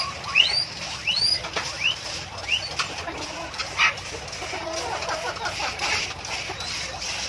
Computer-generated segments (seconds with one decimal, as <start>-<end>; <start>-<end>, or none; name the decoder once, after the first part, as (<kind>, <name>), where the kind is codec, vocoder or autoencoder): none